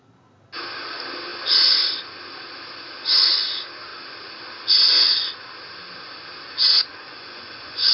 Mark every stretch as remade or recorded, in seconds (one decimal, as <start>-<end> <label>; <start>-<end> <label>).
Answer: 0.0-6.9 recorded; 6.9-7.9 remade